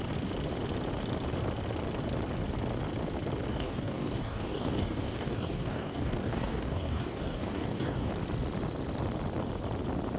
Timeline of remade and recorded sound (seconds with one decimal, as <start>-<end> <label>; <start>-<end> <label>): 0.0-3.5 recorded; 3.5-8.1 remade; 8.1-10.2 recorded